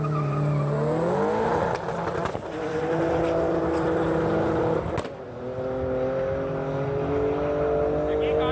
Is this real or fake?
real